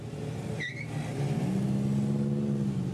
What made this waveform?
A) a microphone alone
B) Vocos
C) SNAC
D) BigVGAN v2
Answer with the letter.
A